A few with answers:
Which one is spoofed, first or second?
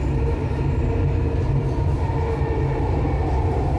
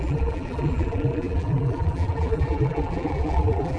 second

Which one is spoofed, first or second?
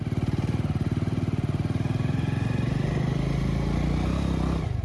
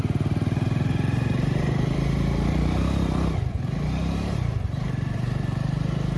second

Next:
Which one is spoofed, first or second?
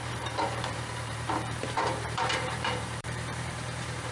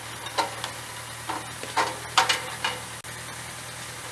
first